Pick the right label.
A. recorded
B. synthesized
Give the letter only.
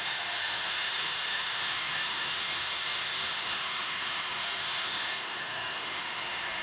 B